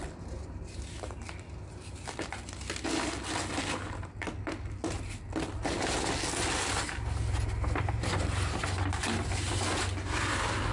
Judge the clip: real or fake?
real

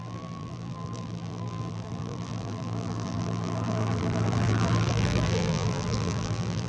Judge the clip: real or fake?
fake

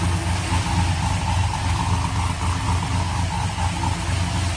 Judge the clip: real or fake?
real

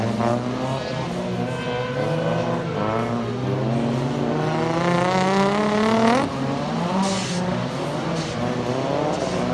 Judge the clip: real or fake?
real